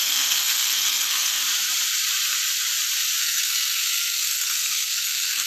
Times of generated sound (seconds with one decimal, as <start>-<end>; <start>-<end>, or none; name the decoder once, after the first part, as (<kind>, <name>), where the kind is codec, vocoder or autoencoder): 0.0-1.4 (codec, SNAC); 3.2-5.5